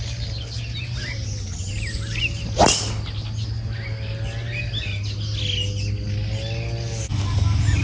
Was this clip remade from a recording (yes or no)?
no